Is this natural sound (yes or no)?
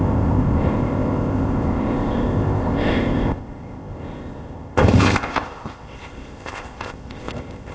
no